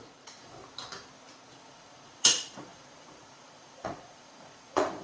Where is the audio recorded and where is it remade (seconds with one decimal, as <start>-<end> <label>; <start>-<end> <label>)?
0.0-0.6 remade; 0.6-1.5 recorded; 1.5-5.0 remade